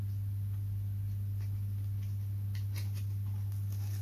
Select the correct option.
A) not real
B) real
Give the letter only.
B